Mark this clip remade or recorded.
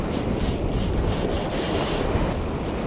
recorded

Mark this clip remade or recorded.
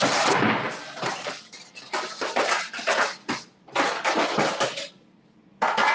recorded